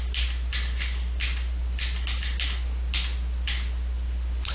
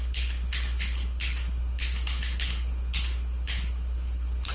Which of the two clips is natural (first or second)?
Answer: first